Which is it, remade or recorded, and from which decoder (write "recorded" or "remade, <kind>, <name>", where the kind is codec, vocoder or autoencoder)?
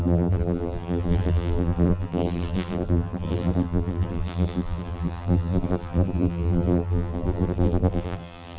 remade, vocoder, BigVGAN v2